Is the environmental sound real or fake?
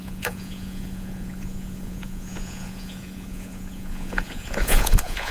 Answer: fake